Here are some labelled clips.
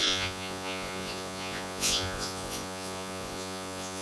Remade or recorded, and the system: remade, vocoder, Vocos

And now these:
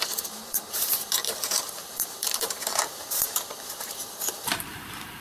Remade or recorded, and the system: remade, vocoder, BigVGAN v2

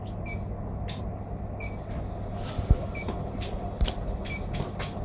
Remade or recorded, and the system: recorded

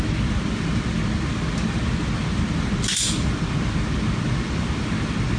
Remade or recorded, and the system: recorded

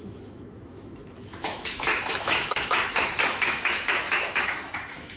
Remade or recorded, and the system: remade, autoencoder, DAC-VAE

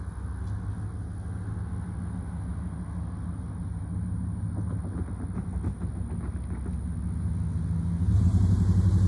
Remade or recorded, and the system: recorded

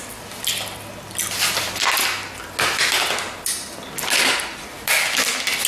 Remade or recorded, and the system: recorded